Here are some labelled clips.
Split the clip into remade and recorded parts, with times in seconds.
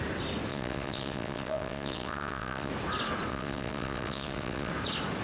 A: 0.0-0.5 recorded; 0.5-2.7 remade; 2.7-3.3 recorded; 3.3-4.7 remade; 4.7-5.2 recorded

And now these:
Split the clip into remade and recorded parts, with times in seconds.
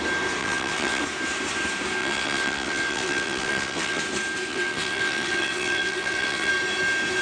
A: 0.0-0.4 recorded; 0.4-1.0 remade; 1.0-2.0 recorded; 2.0-4.0 remade; 4.0-4.5 recorded; 4.5-6.5 remade; 6.5-7.2 recorded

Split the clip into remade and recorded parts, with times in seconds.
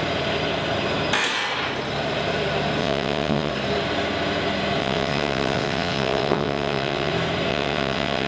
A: 0.0-2.8 recorded; 2.8-3.5 remade; 3.5-4.8 recorded; 4.8-7.1 remade; 7.1-7.5 recorded; 7.5-8.3 remade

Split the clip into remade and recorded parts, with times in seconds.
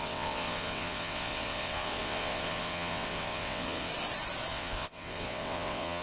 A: 0.0-3.9 remade; 3.9-4.5 recorded; 4.5-6.0 remade